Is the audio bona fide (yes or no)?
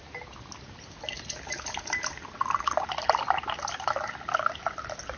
yes